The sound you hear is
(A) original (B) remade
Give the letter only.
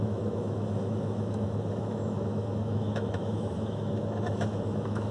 B